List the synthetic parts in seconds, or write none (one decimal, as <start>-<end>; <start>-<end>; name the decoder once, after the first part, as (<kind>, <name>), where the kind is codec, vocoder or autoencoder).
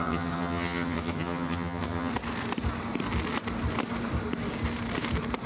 0.0-2.1 (vocoder, HiFi-GAN)